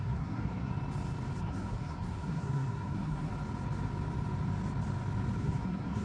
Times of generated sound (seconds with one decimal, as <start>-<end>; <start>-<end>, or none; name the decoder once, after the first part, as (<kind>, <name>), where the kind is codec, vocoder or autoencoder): 0.0-0.7 (codec, SNAC); 1.5-3.3; 5.4-6.0